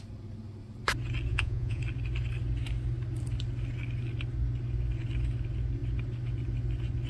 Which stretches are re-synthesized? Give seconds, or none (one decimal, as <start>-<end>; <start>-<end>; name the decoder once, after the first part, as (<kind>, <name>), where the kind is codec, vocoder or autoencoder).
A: 1.3-1.8 (vocoder, Vocos)